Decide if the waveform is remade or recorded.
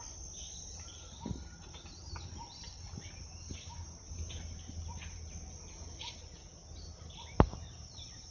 recorded